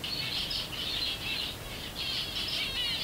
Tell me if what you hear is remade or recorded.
recorded